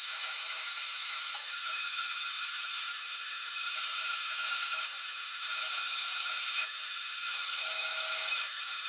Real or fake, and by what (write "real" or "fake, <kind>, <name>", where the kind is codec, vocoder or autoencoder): fake, autoencoder, DAC-VAE